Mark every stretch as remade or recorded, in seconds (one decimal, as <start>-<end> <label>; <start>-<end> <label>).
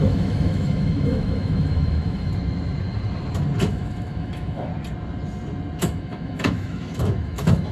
0.0-2.3 remade; 2.3-3.6 recorded; 3.6-4.7 remade; 4.7-5.8 recorded; 5.8-7.7 remade